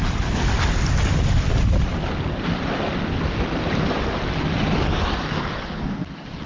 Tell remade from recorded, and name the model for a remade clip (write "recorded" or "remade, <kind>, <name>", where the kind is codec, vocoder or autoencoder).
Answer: recorded